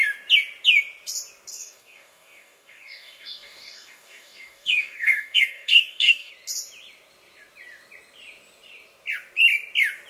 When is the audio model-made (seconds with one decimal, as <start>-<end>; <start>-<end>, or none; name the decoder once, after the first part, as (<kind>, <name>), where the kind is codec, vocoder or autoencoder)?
1.5-6.3 (codec, DAC)